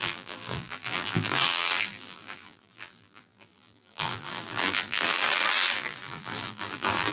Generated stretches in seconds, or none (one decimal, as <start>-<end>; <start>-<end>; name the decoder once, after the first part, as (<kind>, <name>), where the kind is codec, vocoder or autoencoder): 0.0-7.1 (vocoder, BigVGAN v2)